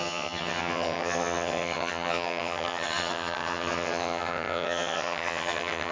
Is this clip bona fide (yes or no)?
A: no